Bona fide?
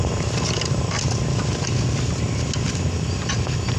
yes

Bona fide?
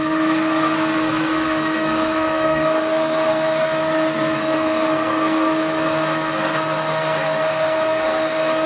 no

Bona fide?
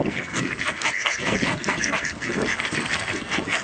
no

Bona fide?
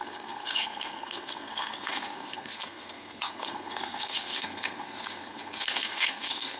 no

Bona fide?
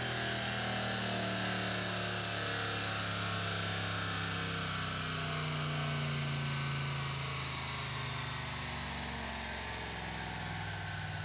yes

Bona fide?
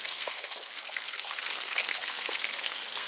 no